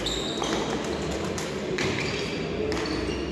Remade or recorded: recorded